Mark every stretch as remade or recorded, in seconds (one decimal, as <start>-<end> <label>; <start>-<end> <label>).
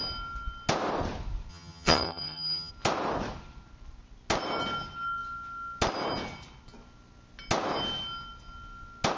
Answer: 0.0-1.5 recorded; 1.5-2.7 remade; 2.7-9.2 recorded